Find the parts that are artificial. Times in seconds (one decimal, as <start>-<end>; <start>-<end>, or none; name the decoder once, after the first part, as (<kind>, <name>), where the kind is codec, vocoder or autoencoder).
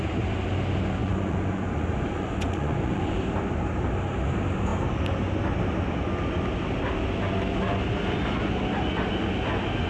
1.0-3.2 (vocoder, Vocos)